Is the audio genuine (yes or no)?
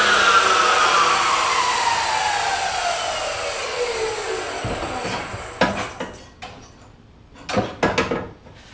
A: yes